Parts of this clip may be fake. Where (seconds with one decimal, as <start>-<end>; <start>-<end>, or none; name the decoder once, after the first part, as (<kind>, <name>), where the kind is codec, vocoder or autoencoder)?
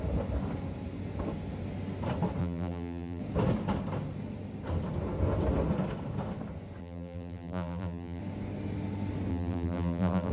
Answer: 2.4-3.2 (vocoder, BigVGAN v2); 6.8-8.2; 9.3-10.3